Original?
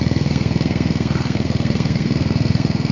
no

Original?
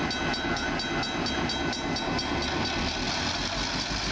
yes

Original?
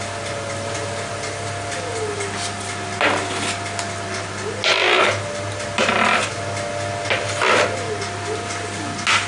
yes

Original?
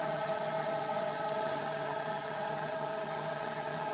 no